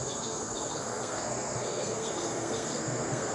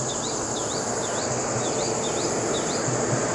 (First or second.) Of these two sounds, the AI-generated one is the first